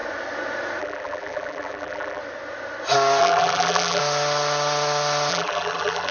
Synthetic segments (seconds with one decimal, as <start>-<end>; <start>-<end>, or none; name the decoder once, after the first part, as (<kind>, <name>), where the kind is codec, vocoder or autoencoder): 0.8-2.2 (vocoder, BigVGAN v2); 3.2-4.0; 5.3-6.1